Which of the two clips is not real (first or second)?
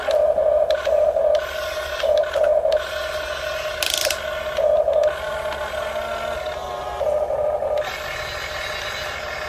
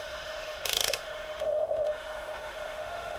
second